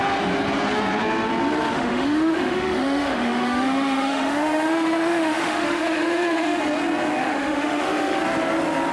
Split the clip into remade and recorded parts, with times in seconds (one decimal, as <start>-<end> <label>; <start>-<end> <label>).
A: 0.0-1.7 recorded; 1.7-6.6 remade; 6.6-7.2 recorded; 7.2-8.2 remade; 8.2-8.9 recorded